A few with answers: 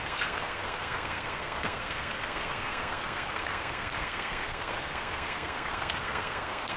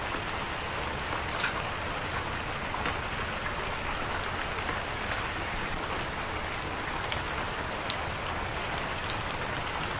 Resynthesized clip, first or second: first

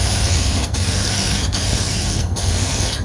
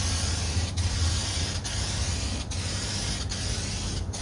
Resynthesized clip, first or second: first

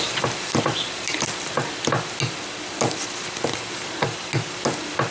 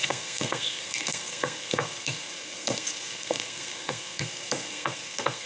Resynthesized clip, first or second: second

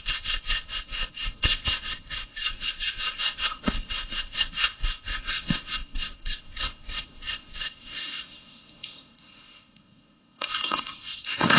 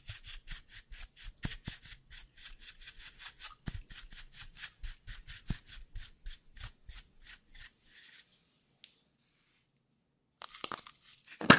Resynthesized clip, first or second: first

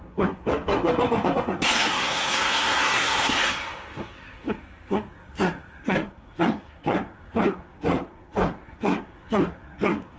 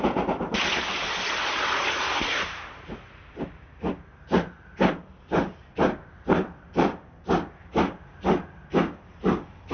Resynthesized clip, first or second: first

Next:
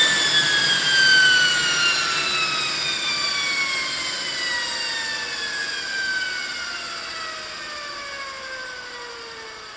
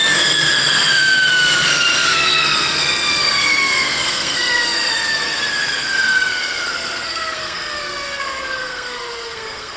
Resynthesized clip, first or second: second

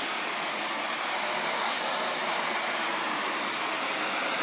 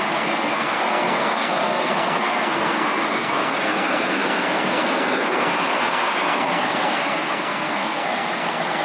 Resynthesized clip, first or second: second